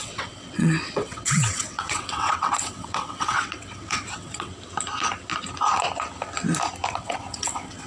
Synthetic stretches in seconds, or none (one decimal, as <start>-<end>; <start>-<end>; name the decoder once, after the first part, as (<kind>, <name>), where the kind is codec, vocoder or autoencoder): 0.0-4.5 (vocoder, WaveNeXt); 6.9-7.9